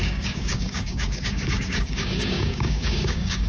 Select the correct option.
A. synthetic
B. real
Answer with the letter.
A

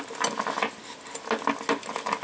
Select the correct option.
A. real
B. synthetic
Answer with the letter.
A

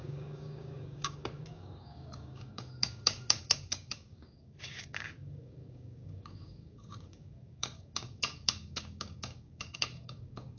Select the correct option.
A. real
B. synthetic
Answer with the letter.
B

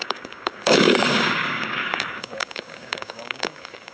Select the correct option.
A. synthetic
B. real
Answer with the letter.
A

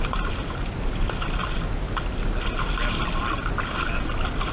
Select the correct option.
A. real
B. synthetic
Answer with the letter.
A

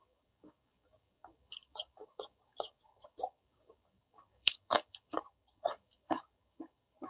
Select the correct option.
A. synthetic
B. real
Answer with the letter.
A